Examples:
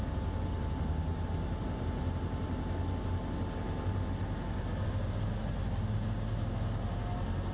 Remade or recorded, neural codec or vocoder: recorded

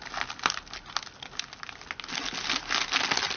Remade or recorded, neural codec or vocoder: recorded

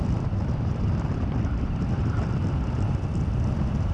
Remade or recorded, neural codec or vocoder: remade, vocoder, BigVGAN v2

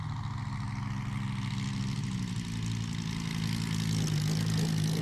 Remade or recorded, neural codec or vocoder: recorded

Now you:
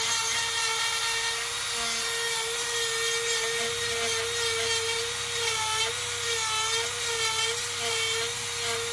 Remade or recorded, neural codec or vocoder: recorded